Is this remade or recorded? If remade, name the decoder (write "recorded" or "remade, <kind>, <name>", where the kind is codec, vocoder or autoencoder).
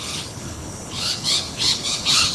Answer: remade, codec, HILCodec